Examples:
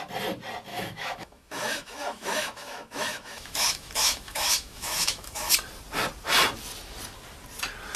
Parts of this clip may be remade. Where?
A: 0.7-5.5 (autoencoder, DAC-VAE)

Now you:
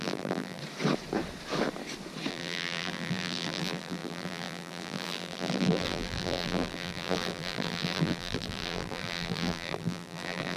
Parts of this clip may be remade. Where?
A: 0.0-0.6 (vocoder, BigVGAN v2); 2.3-10.6

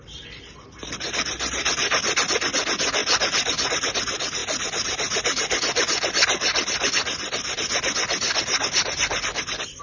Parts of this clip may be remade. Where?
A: 1.8-2.3 (vocoder, BigVGAN v2); 4.4-9.8

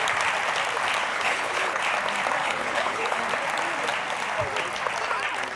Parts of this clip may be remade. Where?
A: 1.1-1.8 (codec, HILCodec); 2.4-3.2

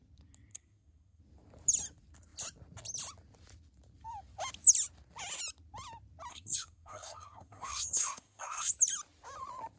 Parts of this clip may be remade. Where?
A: 0.5-1.2 (codec, SNAC); 6.3-8.7

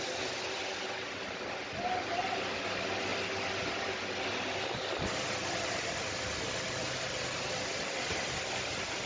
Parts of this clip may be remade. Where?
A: none